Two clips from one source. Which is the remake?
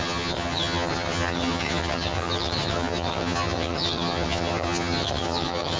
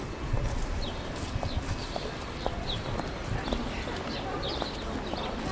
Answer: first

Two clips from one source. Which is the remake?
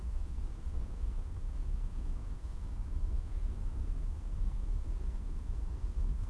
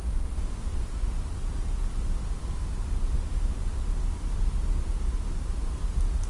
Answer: first